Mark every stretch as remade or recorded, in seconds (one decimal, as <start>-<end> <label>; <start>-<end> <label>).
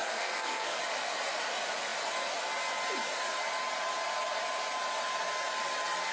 0.0-0.8 remade; 0.8-6.1 recorded